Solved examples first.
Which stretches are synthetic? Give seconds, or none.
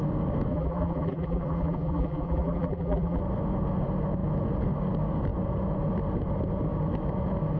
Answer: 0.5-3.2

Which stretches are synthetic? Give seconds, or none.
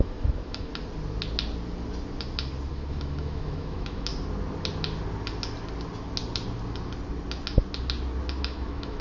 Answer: 0.0-0.7; 2.7-4.1; 8.4-9.0